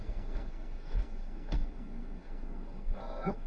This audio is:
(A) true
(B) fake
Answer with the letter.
B